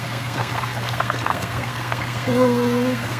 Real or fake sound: fake